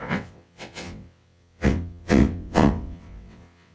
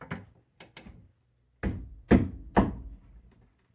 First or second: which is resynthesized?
first